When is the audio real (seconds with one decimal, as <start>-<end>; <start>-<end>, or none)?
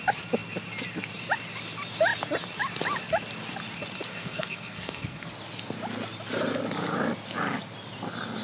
0.0-4.1; 5.3-8.4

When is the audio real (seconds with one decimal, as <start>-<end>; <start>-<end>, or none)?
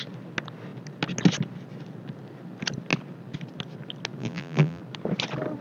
0.0-4.2; 4.8-5.6